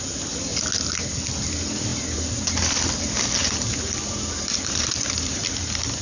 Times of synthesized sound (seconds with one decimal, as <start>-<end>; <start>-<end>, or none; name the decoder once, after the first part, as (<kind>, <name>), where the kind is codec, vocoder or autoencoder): 1.9-2.6 (vocoder, BigVGAN v2); 3.4-5.4